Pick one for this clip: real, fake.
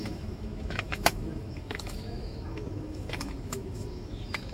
fake